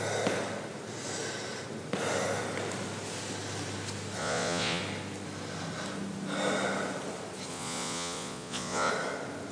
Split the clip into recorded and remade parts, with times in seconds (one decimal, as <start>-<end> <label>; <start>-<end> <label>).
0.0-4.2 recorded; 4.2-4.8 remade; 4.8-7.5 recorded; 7.5-8.9 remade; 8.9-9.5 recorded